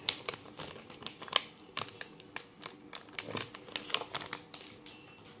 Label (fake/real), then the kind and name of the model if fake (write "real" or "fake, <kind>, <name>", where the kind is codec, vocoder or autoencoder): real